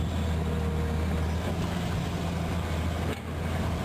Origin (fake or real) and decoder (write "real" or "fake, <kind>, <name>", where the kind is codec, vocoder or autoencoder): real